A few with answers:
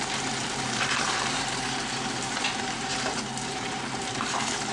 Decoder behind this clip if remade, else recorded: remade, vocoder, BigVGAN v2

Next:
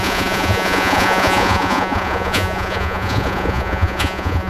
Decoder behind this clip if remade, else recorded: remade, vocoder, Vocos